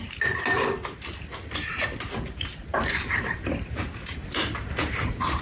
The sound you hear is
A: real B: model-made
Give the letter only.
B